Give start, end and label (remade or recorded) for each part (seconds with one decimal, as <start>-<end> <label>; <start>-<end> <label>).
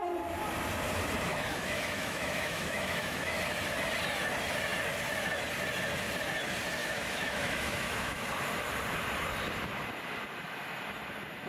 0.0-1.3 recorded; 1.3-3.4 remade; 3.4-6.8 recorded; 6.8-8.3 remade; 8.3-11.5 recorded